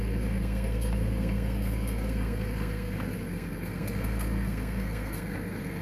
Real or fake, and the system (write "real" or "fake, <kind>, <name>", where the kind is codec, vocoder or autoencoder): fake, codec, SNAC